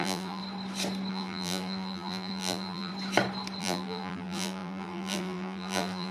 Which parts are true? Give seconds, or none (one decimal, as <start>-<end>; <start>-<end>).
0.4-1.1; 2.9-3.6